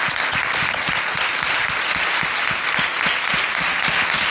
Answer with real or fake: real